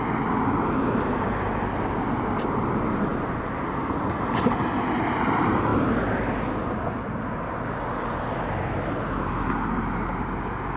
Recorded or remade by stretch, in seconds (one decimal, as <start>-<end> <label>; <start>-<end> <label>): 0.0-10.8 recorded